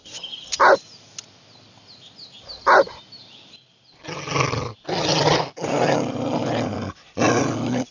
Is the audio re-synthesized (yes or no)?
no